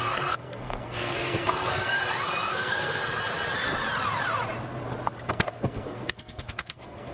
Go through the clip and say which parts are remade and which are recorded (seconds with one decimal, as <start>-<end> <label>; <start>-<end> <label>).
0.0-2.0 remade; 2.0-2.5 recorded; 2.5-3.0 remade; 3.0-5.2 recorded; 5.2-7.1 remade